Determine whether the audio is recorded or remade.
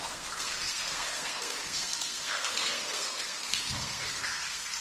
remade